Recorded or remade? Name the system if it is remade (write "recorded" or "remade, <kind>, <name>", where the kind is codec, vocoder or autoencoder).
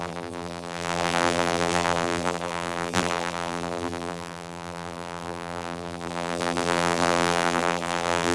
remade, vocoder, BigVGAN v2